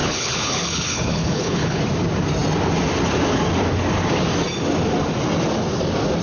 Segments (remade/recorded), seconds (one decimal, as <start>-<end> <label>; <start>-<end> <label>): 0.0-1.8 remade; 1.8-6.2 recorded